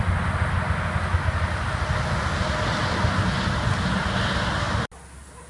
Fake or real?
real